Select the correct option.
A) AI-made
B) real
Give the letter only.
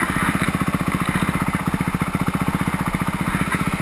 B